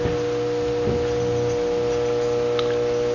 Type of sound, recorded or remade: recorded